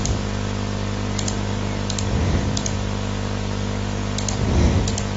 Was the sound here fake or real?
real